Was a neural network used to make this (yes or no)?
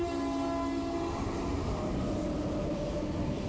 no